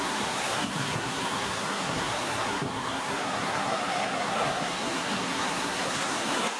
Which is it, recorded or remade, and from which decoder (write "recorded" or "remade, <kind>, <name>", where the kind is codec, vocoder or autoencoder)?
remade, codec, SNAC